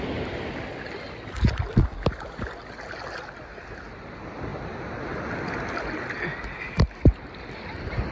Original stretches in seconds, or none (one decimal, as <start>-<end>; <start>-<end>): 0.0-8.1